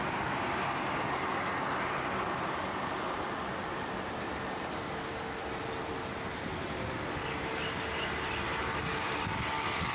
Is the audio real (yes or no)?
yes